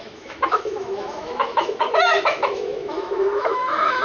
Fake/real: fake